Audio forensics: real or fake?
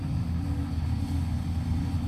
real